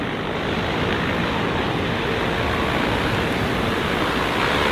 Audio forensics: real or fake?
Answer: real